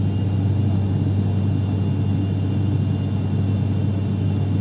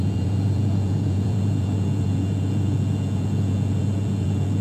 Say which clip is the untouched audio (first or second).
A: first